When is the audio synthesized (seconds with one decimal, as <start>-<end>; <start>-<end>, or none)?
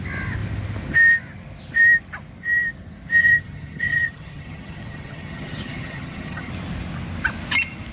3.2-6.5